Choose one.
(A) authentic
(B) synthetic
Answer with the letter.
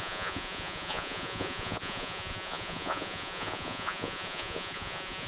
B